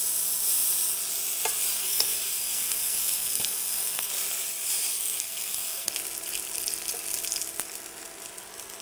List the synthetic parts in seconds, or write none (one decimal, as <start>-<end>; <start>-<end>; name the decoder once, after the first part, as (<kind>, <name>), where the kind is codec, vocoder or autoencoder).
1.8-4.1 (codec, SNAC); 4.9-5.9

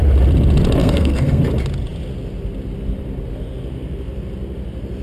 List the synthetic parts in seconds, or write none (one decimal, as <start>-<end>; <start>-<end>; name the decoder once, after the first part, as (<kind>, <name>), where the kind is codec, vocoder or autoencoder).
0.8-1.4 (codec, SNAC)

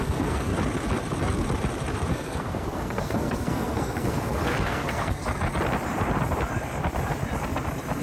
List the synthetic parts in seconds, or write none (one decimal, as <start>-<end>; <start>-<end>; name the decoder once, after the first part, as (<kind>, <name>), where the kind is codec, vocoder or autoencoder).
0.0-0.5 (codec, SNAC); 2.1-5.2

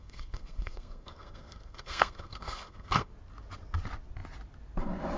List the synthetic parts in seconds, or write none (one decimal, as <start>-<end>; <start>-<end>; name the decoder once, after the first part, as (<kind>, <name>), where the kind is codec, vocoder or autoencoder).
0.0-3.1 (codec, SNAC)

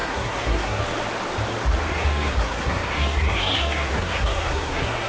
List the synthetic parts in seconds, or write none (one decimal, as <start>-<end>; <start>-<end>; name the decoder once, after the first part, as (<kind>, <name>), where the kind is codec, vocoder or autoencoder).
0.0-0.8 (codec, SNAC); 1.9-5.1

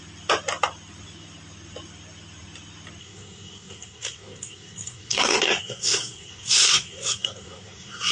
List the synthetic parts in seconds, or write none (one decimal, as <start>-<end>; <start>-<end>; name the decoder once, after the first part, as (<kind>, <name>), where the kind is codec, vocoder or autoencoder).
3.0-8.1 (codec, SNAC)